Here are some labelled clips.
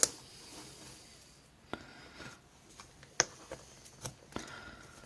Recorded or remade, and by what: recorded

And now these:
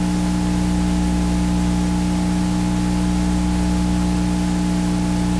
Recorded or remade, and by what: recorded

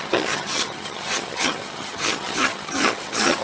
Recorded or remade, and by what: remade, vocoder, HiFi-GAN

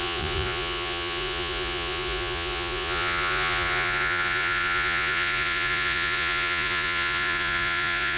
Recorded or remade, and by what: remade, vocoder, Vocos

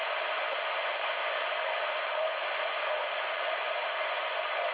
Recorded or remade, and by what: remade, vocoder, Vocos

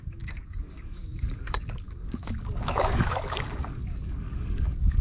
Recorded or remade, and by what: remade, codec, DAC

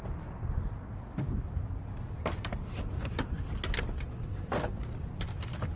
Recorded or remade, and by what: recorded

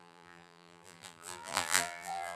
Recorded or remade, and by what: remade, vocoder, BigVGAN v2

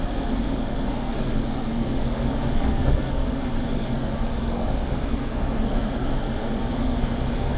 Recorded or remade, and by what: remade, codec, SNAC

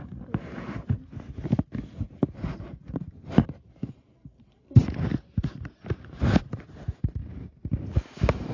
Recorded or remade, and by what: remade, vocoder, BigVGAN v2